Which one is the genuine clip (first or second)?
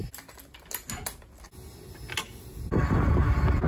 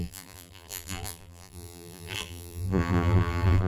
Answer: first